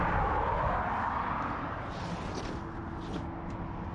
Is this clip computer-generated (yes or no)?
no